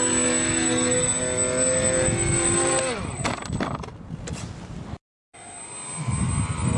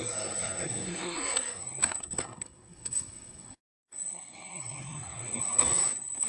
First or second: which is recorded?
first